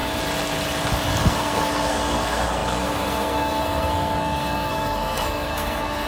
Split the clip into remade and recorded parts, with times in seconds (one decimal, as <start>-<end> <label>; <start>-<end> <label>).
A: 0.0-1.2 recorded; 1.2-6.1 remade